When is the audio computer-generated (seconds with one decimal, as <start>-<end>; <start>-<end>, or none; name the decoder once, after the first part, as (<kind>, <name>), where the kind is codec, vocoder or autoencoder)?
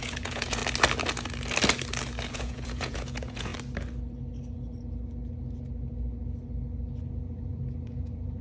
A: 0.0-0.6 (vocoder, Vocos); 2.3-3.5; 7.1-8.4